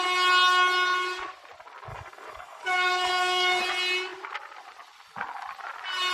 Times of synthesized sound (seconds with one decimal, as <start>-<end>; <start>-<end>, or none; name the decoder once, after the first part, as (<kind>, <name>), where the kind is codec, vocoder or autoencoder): 1.9-3.6 (codec, DAC)